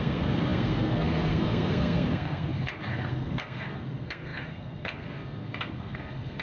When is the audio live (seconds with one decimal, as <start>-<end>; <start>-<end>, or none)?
none